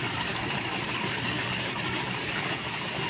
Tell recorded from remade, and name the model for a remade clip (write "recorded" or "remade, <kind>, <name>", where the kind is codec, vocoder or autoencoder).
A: remade, codec, DAC